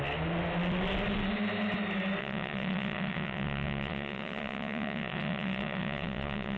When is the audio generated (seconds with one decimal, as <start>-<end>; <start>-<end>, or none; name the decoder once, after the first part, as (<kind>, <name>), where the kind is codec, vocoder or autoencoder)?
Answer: 2.2-6.6 (vocoder, WaveNeXt)